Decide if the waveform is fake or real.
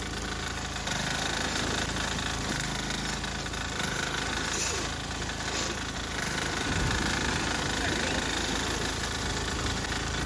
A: real